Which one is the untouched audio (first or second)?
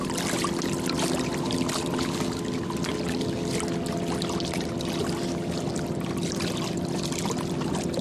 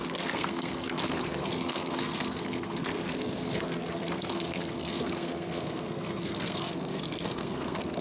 first